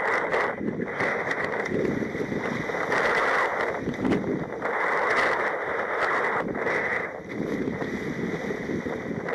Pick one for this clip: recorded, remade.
recorded